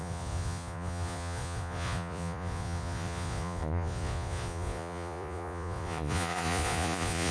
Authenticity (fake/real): fake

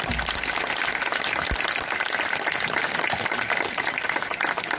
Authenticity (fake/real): real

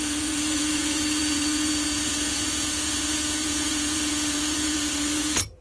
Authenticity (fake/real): fake